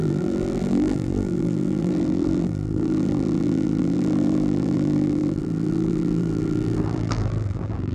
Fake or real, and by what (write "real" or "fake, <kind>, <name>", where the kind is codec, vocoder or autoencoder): fake, vocoder, BigVGAN v2